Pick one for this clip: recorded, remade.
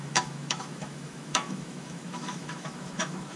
remade